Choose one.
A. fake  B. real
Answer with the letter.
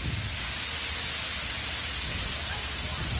B